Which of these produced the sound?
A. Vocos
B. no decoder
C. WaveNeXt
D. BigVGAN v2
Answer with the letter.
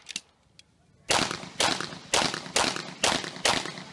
B